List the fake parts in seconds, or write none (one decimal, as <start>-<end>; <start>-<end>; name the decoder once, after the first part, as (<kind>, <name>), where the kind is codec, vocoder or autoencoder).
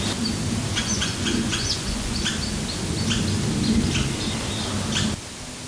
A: 0.8-2.2 (vocoder, Vocos)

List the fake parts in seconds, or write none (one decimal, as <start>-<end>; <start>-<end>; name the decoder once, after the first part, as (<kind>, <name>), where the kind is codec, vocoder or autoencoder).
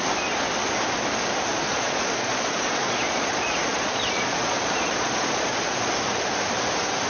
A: 1.5-5.8 (vocoder, Vocos)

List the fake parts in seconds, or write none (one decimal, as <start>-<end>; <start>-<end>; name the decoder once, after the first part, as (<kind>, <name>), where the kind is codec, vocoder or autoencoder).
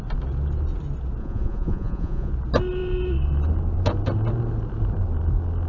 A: 1.2-2.3 (vocoder, Vocos)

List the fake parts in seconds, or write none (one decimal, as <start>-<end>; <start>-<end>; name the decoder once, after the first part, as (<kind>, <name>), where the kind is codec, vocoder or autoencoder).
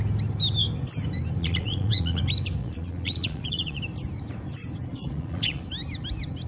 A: 1.4-2.2 (vocoder, Vocos); 2.6-3.8; 4.9-5.6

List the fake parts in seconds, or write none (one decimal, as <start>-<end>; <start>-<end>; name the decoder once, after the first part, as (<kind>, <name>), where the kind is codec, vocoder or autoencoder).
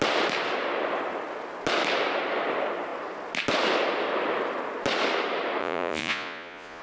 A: 5.6-6.8 (vocoder, Vocos)